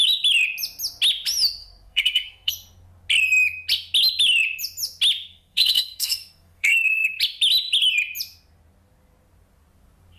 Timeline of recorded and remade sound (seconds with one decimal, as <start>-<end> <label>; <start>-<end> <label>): 0.0-1.6 recorded; 1.6-2.5 remade; 2.5-5.3 recorded; 5.3-7.2 remade; 7.2-10.2 recorded